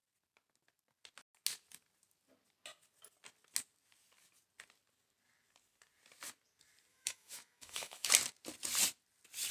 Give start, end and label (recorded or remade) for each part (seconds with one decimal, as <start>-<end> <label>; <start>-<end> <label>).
0.0-6.9 recorded; 6.9-8.1 remade; 8.1-9.5 recorded